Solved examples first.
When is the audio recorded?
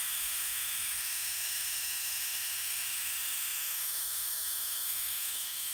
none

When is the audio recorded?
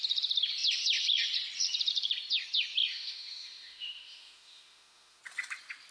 0.0-2.9; 5.2-5.9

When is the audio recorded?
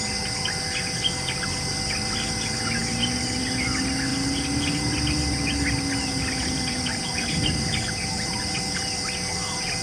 0.0-2.8; 3.4-4.1; 7.0-9.8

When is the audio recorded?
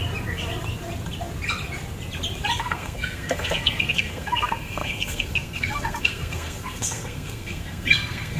0.0-2.6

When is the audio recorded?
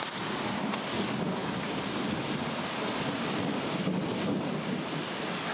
0.0-5.5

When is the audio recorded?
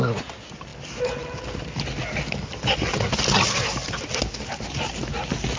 0.0-5.6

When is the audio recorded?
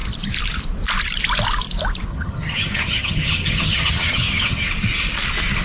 0.0-2.1; 4.7-5.6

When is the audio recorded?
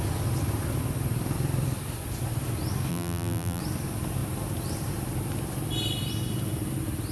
0.0-2.9; 3.6-7.1